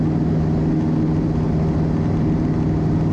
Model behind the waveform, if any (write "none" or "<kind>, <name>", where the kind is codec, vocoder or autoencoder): none